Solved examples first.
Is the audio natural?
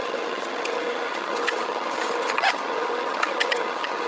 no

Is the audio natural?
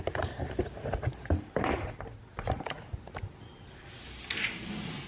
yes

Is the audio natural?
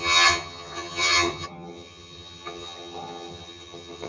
no